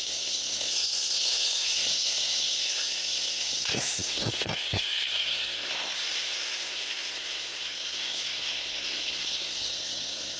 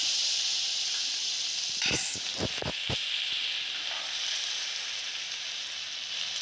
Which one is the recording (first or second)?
second